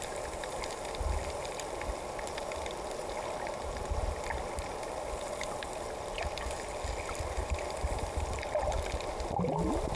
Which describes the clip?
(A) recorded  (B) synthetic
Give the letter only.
A